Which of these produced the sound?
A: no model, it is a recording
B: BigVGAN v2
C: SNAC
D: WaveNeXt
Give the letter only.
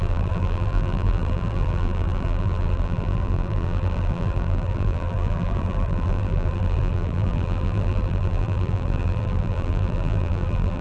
B